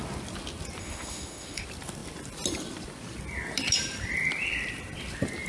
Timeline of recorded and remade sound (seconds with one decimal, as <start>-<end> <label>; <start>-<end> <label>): 0.0-0.8 recorded; 0.8-1.6 remade; 1.6-5.5 recorded